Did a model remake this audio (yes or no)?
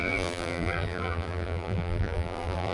yes